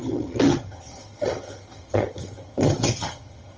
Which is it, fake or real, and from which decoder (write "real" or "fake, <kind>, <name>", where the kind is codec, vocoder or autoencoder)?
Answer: fake, vocoder, HiFi-GAN